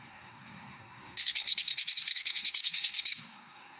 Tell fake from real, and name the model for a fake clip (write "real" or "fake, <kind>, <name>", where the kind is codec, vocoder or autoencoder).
fake, codec, SNAC